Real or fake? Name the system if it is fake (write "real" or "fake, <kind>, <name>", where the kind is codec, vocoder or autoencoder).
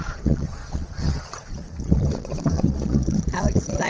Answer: fake, vocoder, Vocos